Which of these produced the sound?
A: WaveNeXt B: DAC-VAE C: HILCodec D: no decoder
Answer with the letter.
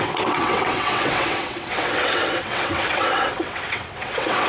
A